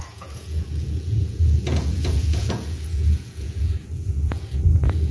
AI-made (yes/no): yes